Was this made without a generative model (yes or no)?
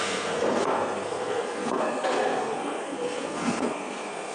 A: no